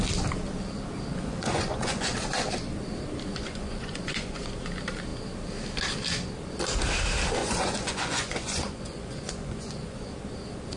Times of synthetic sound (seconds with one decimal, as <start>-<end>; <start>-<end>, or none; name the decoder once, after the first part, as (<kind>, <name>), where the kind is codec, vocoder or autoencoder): 1.1-2.1 (vocoder, Vocos); 3.3-4.6; 7.4-10.1